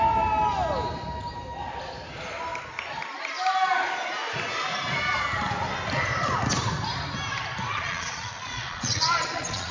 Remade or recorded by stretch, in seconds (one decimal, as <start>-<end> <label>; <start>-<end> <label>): 0.0-7.7 recorded; 7.7-9.7 remade